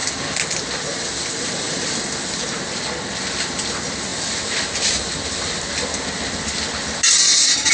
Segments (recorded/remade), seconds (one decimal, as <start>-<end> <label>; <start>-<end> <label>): 0.0-7.7 recorded